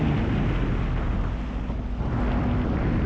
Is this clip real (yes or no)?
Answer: yes